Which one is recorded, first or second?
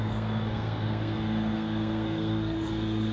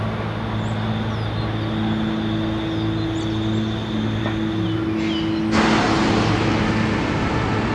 second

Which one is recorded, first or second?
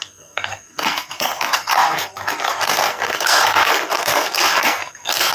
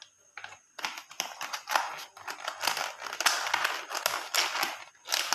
second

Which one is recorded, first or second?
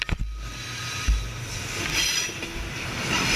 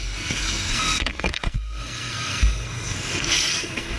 first